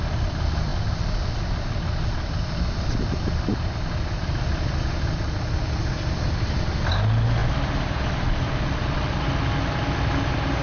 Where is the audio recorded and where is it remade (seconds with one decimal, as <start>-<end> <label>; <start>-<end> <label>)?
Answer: 0.0-10.6 recorded